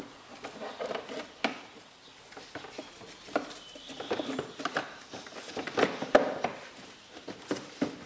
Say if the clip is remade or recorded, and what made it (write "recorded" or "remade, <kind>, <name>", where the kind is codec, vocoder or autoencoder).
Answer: recorded